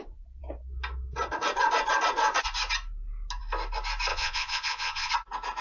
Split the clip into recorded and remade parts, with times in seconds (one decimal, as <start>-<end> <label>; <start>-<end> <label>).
0.0-4.1 recorded; 4.1-5.1 remade; 5.1-5.6 recorded